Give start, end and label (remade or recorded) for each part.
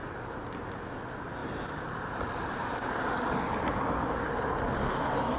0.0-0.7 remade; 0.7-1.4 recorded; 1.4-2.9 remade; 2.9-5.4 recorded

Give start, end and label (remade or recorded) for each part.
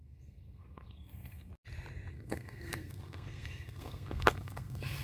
0.0-1.5 remade; 1.5-2.1 recorded; 2.1-5.0 remade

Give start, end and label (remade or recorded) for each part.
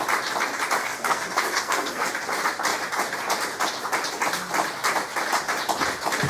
0.0-0.8 recorded; 0.8-2.1 remade; 2.1-6.3 recorded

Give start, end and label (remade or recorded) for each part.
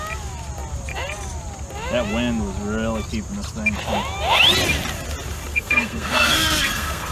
0.0-5.5 recorded; 5.5-7.1 remade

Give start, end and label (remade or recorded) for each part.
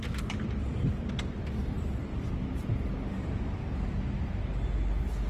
0.0-0.6 recorded; 0.6-2.7 remade; 2.7-3.1 recorded; 3.1-4.3 remade; 4.3-5.3 recorded